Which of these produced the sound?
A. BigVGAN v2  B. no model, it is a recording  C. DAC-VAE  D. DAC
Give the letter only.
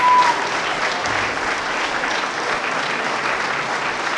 B